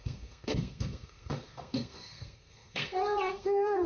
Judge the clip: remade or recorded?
remade